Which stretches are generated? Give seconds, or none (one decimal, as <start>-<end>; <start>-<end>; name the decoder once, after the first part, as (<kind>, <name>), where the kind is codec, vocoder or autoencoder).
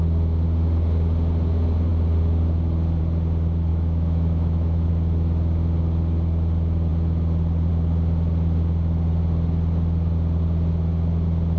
3.7-4.9 (autoencoder, DAC-VAE)